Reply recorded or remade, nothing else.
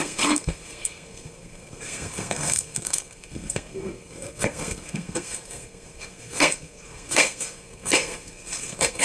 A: remade